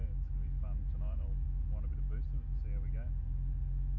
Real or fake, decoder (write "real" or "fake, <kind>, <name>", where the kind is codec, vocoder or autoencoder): real